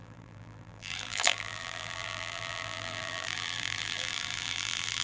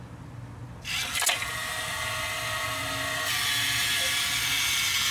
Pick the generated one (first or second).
first